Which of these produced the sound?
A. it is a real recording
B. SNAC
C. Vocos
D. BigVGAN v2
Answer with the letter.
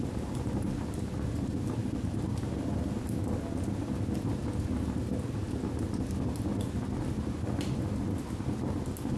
A